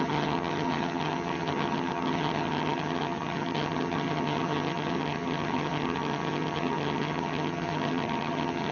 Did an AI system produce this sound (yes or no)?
yes